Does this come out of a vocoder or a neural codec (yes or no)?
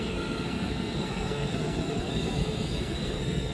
yes